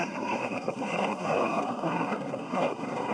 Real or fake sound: fake